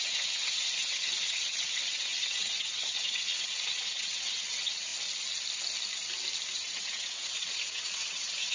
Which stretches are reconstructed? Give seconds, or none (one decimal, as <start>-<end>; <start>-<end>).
0.0-4.9; 6.5-8.5